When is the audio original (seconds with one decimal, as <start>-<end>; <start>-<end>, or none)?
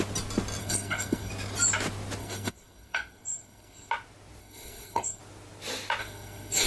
0.0-0.6; 1.3-2.2; 3.9-4.4; 5.2-6.0